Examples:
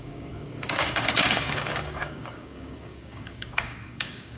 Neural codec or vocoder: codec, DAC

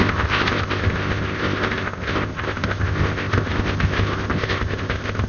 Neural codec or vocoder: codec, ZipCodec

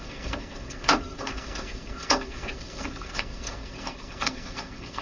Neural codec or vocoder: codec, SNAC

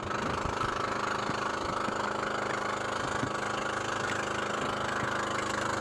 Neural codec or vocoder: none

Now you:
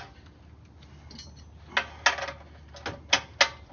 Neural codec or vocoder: none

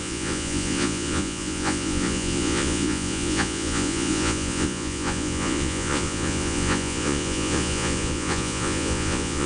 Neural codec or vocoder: vocoder, Vocos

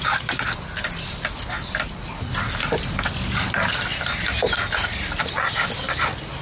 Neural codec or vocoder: none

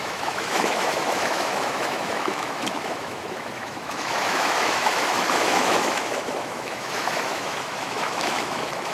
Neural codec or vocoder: autoencoder, DAC-VAE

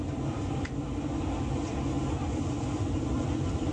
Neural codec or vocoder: none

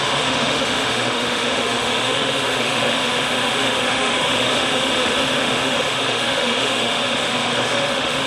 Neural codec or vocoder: autoencoder, DAC-VAE